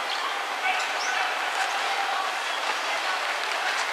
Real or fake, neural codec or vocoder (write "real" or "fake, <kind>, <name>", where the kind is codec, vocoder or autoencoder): fake, vocoder, BigVGAN v2